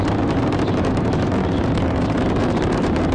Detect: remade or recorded remade